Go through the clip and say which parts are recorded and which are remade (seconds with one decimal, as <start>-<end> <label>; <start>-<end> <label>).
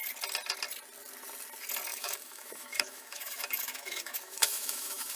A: 0.0-1.9 recorded; 1.9-5.2 remade